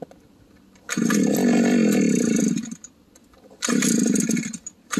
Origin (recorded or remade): recorded